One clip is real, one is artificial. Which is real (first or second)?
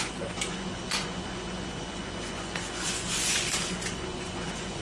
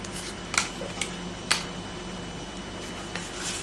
second